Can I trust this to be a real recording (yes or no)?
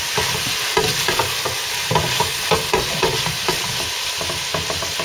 yes